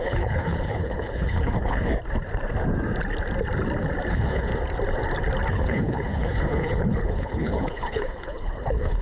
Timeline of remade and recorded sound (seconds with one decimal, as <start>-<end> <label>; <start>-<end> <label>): 0.0-1.9 remade; 1.9-4.1 recorded; 4.1-4.5 remade; 4.5-5.5 recorded; 5.5-9.0 remade